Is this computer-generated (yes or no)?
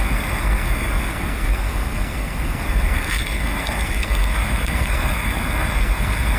yes